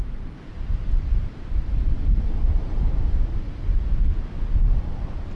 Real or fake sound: real